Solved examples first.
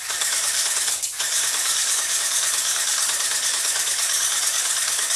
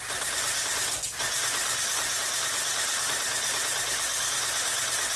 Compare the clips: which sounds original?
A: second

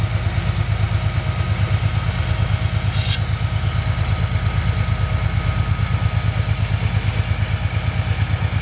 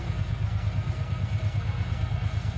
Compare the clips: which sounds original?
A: first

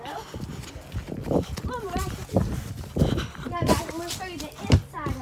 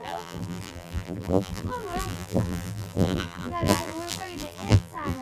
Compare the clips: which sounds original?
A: first